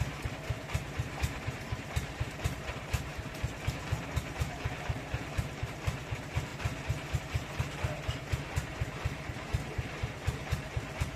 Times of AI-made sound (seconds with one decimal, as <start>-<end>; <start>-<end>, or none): 0.0-3.1; 3.6-11.2